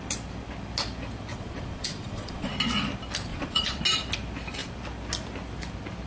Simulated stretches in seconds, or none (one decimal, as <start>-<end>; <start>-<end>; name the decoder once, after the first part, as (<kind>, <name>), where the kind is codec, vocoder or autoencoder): 1.3-2.5 (vocoder, Vocos); 3.3-3.8